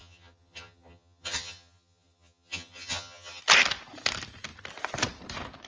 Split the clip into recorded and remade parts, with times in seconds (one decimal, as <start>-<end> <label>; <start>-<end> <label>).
0.0-3.4 remade; 3.4-5.7 recorded